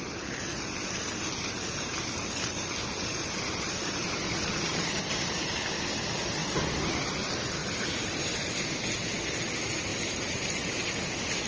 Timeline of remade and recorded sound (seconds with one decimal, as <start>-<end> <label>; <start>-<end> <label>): 0.0-4.7 recorded; 4.7-5.5 remade; 5.5-6.4 recorded; 6.4-7.1 remade; 7.1-7.6 recorded; 7.6-8.5 remade; 8.5-9.9 recorded; 9.9-10.9 remade; 10.9-11.5 recorded